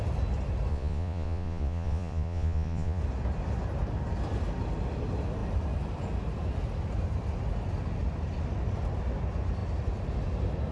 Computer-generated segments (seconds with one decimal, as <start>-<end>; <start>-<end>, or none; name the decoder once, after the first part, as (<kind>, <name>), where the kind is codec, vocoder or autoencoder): 0.7-3.0 (vocoder, Vocos)